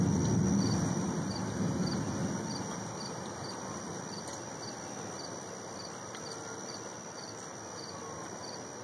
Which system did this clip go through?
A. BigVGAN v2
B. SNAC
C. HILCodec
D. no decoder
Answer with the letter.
D